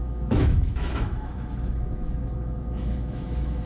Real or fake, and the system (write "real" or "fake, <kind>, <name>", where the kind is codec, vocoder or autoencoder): fake, autoencoder, DAC-VAE